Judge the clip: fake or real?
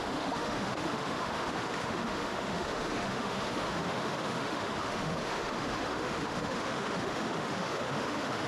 fake